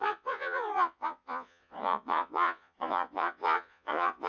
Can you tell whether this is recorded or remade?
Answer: remade